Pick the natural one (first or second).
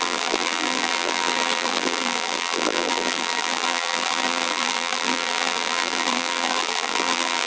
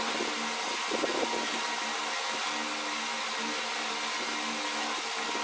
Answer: second